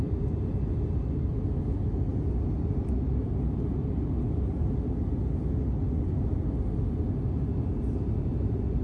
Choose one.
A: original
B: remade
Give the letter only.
A